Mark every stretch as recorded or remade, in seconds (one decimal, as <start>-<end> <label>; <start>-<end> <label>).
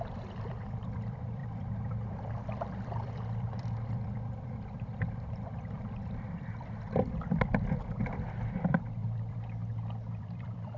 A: 0.0-9.6 remade; 9.6-10.2 recorded; 10.2-10.8 remade